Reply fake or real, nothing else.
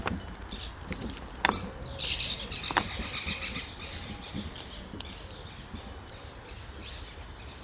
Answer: real